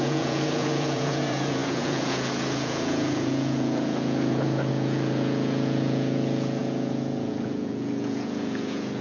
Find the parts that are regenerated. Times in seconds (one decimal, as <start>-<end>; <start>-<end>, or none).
0.0-9.0